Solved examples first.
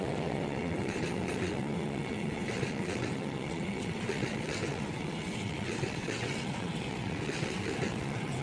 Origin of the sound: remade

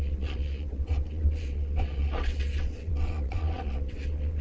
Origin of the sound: remade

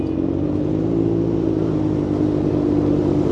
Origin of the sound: recorded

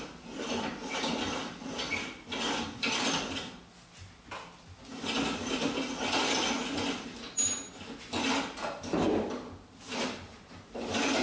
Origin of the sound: recorded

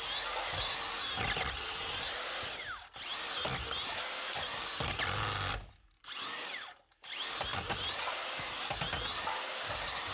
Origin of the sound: recorded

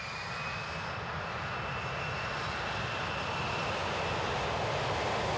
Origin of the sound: recorded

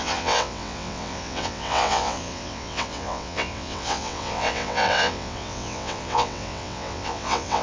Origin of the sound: remade